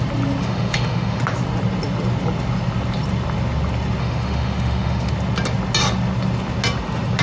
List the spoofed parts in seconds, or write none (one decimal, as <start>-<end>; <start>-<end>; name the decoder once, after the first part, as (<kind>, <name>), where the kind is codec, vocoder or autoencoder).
0.4-1.2 (autoencoder, DAC-VAE); 4.0-5.1